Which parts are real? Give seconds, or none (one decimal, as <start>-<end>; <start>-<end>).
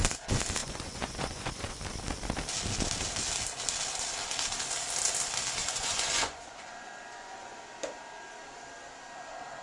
0.0-0.6; 1.8-5.6; 7.6-9.6